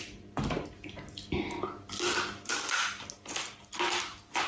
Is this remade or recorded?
recorded